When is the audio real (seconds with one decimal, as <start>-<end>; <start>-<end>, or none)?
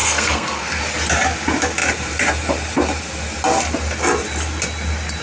0.8-5.2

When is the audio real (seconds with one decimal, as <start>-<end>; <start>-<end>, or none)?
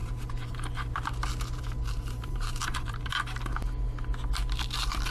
3.1-5.1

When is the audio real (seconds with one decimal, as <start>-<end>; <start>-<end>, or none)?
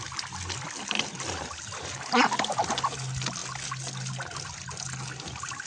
0.0-5.7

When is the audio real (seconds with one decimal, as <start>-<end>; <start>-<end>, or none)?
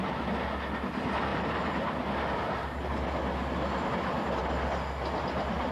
0.0-1.3; 1.9-5.7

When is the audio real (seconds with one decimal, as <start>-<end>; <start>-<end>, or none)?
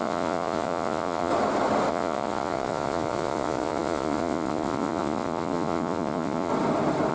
1.3-1.9; 6.5-7.1